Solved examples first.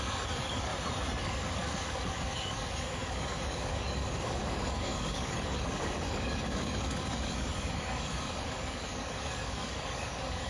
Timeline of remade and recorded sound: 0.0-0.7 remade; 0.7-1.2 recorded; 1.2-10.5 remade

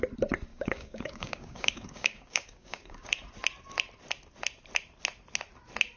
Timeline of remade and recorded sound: 0.0-0.5 recorded; 0.5-3.1 remade; 3.1-6.0 recorded

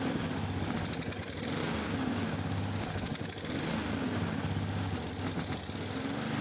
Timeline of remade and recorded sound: 0.0-1.6 recorded; 1.6-3.3 remade; 3.3-6.4 recorded

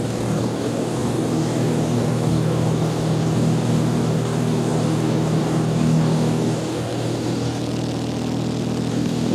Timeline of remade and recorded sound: 0.0-7.6 remade; 7.6-8.9 recorded; 8.9-9.3 remade